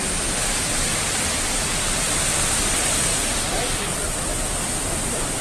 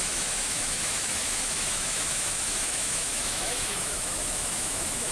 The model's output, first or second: second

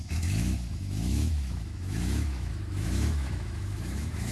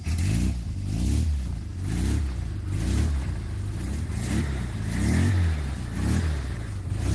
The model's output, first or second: first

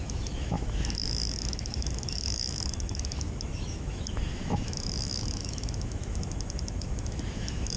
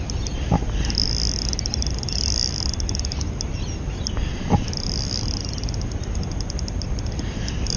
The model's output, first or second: first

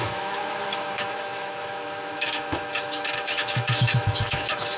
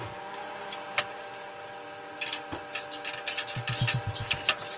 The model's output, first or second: first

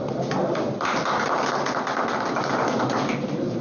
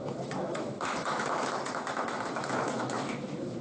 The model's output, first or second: second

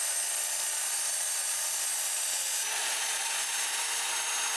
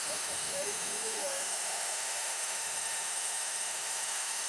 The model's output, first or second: second